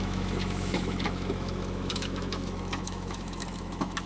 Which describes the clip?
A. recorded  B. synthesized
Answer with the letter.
B